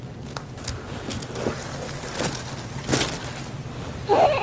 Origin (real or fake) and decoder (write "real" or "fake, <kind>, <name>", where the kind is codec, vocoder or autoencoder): real